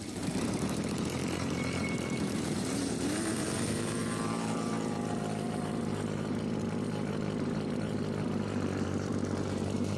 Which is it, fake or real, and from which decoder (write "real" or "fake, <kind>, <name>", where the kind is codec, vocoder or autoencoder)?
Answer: fake, vocoder, BigVGAN v2